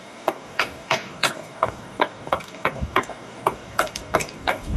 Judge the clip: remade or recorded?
remade